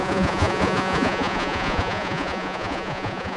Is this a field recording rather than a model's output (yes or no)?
no